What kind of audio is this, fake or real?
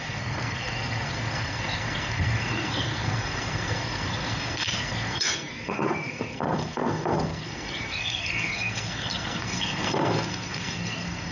fake